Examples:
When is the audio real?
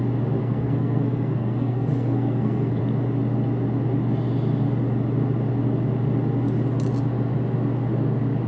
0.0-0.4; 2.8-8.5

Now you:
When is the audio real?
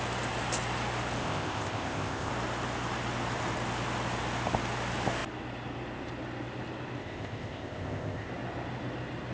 0.0-1.2; 2.3-7.0; 8.3-9.3